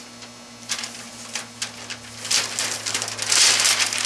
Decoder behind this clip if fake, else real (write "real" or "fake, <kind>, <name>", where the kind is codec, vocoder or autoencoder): real